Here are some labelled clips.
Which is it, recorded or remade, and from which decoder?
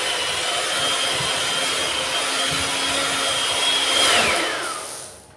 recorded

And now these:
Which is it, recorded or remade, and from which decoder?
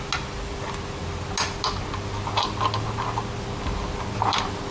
recorded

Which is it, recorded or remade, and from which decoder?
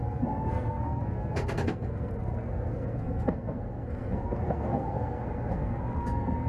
remade, codec, SNAC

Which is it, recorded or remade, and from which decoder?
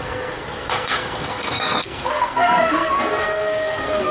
remade, codec, SNAC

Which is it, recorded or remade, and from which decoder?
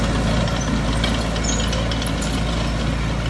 recorded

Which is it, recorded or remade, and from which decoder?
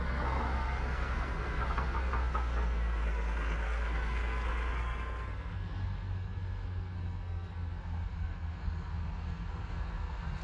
remade, codec, SNAC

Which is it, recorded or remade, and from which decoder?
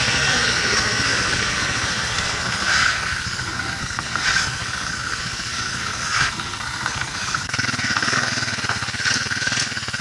remade, codec, SNAC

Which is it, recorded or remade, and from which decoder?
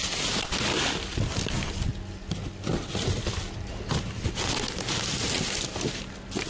recorded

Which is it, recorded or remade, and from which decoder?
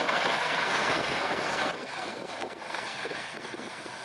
remade, codec, SNAC